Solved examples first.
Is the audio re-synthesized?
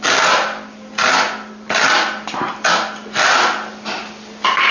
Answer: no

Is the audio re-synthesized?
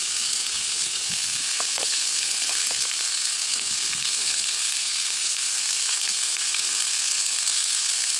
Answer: yes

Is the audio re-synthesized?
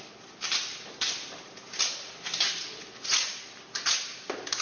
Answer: no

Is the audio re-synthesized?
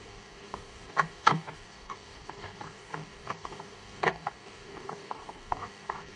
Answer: yes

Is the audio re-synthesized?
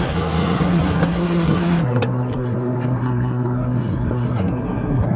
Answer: yes